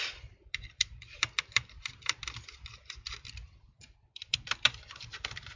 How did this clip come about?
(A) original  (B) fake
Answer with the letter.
B